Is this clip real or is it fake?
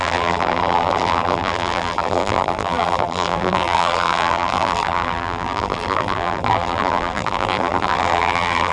fake